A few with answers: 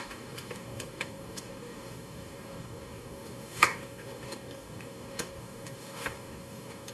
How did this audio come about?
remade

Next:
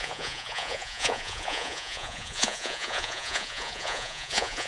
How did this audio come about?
remade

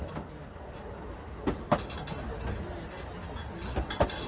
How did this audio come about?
recorded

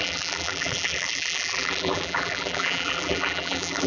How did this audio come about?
remade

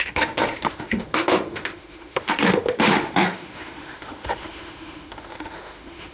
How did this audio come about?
remade